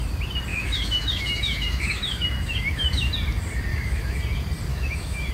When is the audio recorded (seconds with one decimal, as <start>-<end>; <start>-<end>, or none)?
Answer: 0.0-0.5; 3.1-3.7; 4.2-4.7

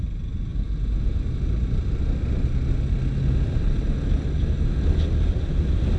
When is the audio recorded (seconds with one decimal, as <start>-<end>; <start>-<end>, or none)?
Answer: 0.0-6.0

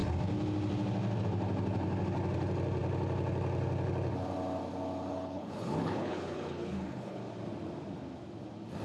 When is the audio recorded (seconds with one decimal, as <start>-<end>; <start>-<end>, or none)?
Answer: 0.0-5.1; 7.2-8.8

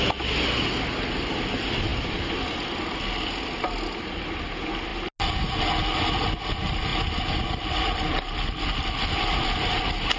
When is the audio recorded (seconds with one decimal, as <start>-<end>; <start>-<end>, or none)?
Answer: 0.0-10.2

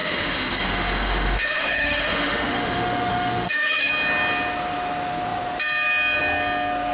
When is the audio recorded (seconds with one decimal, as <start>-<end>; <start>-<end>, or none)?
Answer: 3.9-6.9